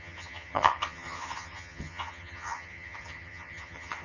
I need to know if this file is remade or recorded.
remade